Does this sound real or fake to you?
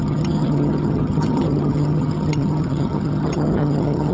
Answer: fake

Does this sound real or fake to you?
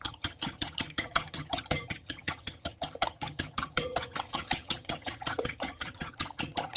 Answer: fake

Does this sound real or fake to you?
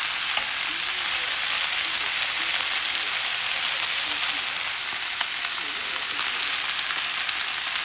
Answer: real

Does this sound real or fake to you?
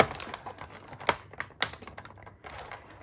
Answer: real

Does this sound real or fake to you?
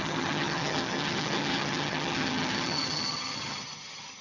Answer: fake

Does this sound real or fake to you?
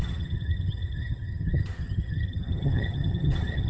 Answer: fake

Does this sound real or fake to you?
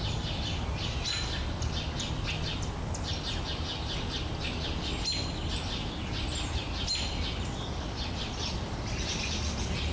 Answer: real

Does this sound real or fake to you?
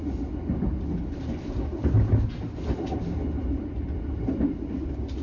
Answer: real